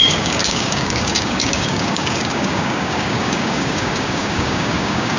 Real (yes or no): no